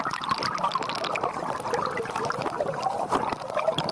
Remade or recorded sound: recorded